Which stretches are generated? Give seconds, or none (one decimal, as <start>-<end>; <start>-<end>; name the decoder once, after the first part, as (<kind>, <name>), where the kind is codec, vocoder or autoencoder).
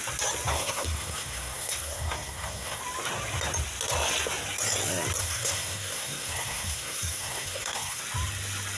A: 0.5-2.8 (codec, SNAC); 5.2-8.0